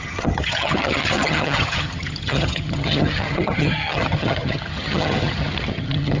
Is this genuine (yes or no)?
no